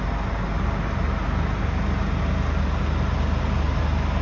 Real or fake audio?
real